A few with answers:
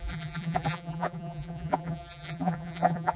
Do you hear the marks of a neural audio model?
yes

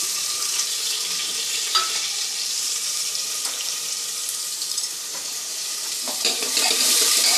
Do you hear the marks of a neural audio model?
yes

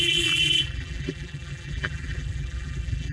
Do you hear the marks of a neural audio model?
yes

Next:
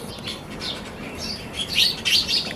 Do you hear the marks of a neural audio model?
yes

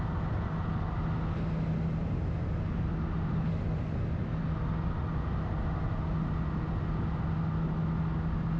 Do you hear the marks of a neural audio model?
no